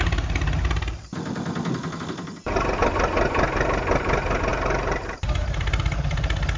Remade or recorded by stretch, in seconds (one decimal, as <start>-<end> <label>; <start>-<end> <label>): 0.0-6.6 recorded

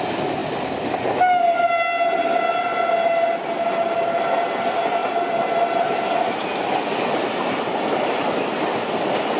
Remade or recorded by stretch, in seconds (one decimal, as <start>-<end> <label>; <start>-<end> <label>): 0.0-9.4 recorded

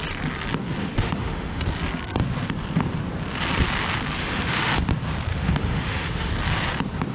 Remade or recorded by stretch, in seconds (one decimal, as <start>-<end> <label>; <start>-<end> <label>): 0.0-0.8 recorded; 0.8-1.6 remade; 1.6-4.2 recorded; 4.2-4.7 remade; 4.7-5.3 recorded; 5.3-6.3 remade; 6.3-7.1 recorded

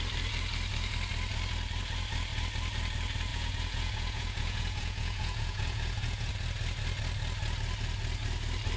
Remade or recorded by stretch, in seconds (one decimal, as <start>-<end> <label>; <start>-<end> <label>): 0.0-3.3 recorded; 3.3-6.3 remade; 6.3-8.8 recorded

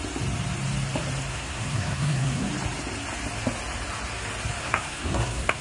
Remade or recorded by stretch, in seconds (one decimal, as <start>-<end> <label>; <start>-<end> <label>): 0.0-1.3 recorded; 1.3-2.5 remade; 2.5-4.6 recorded; 4.6-5.6 remade

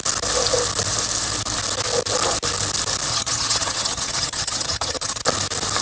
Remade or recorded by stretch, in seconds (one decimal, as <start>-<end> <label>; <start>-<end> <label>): 0.0-3.1 recorded; 3.1-5.2 remade; 5.2-5.8 recorded

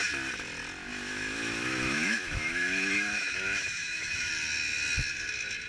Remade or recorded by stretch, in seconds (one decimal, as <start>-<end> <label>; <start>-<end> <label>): 0.0-0.9 recorded; 0.9-4.3 remade; 4.3-5.7 recorded

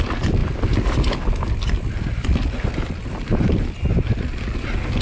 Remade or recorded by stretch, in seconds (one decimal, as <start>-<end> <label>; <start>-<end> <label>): 0.0-5.0 recorded